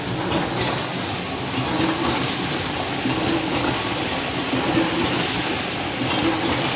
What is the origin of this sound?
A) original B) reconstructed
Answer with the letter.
A